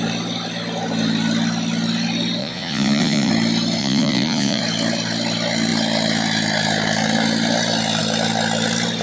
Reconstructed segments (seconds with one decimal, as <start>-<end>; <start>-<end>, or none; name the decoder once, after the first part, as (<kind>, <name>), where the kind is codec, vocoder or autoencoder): 2.4-3.3 (vocoder, Vocos); 3.8-4.6